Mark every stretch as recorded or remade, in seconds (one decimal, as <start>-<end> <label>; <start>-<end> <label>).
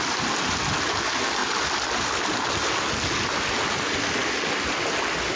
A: 0.0-5.4 recorded